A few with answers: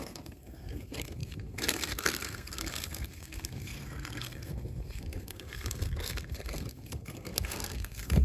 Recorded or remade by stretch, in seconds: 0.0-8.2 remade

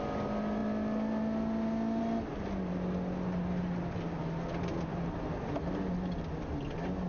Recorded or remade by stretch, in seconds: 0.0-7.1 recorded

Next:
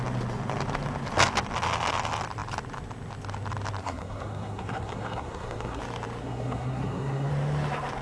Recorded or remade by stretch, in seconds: 0.0-3.8 recorded; 3.8-5.8 remade; 5.8-6.2 recorded; 6.2-7.3 remade; 7.3-8.0 recorded

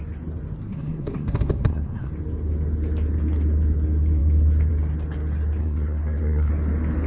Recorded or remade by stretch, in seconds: 0.0-0.6 recorded; 0.6-2.1 remade; 2.1-5.6 recorded; 5.6-6.5 remade; 6.5-7.1 recorded

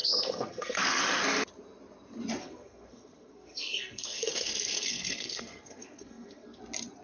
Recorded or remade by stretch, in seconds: 0.0-1.0 remade; 1.0-2.4 recorded; 2.4-6.6 remade; 6.6-7.0 recorded

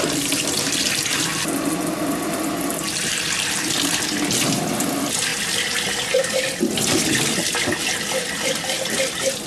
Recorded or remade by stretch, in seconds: 0.0-9.5 recorded